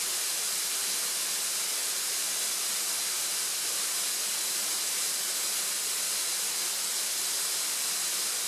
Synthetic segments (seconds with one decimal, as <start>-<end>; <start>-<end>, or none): none